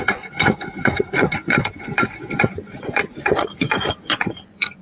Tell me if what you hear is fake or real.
fake